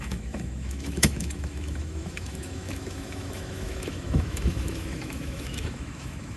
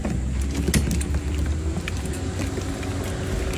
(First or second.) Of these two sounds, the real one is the second